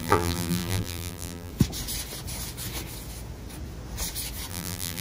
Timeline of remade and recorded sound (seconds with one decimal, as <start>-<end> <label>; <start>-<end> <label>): 0.0-1.5 remade; 1.5-4.5 recorded; 4.5-5.0 remade